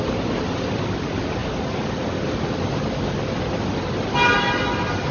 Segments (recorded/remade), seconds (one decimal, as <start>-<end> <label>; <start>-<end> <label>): 0.0-5.1 recorded